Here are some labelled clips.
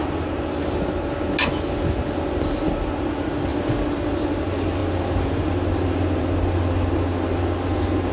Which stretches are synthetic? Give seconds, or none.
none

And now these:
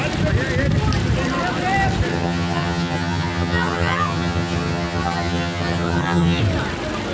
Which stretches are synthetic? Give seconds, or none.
2.1-6.4

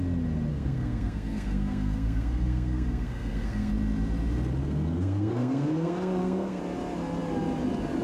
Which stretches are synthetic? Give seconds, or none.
0.5-3.7; 4.6-6.6

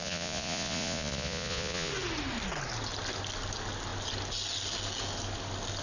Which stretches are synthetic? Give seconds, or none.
0.0-1.9

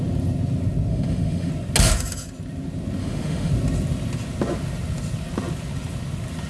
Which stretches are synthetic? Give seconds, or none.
0.9-1.5; 3.0-3.5

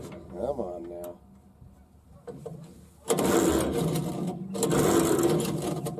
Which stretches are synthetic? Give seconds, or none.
none